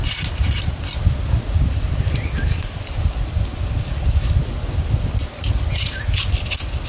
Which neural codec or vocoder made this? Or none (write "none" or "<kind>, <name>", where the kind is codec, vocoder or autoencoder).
none